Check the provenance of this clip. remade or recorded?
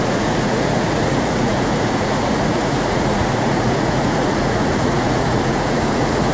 remade